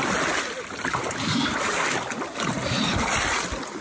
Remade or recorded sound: recorded